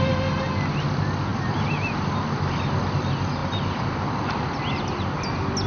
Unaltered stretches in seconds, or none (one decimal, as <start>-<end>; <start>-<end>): 0.0-5.7